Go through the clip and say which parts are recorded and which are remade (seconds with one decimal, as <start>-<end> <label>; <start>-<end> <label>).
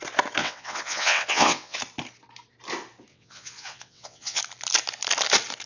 0.0-0.4 recorded; 0.4-1.8 remade; 1.8-3.1 recorded; 3.1-4.4 remade; 4.4-5.7 recorded